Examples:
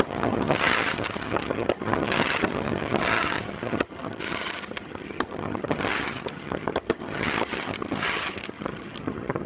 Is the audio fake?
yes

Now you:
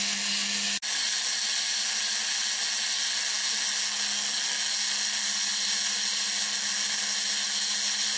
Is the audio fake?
no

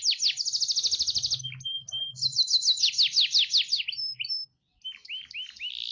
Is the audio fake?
no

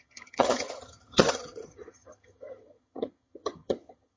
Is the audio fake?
yes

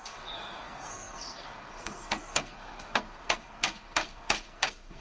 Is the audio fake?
yes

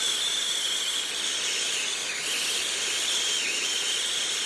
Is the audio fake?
no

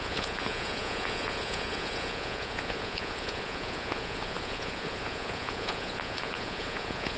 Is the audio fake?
yes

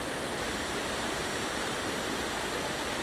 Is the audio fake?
no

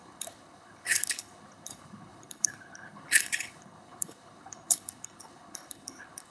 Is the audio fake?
yes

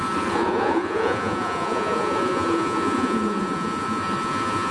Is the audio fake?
yes